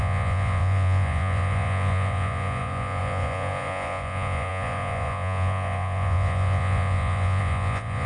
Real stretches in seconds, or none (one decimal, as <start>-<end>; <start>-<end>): none